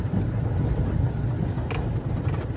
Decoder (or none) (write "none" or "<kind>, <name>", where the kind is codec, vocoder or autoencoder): none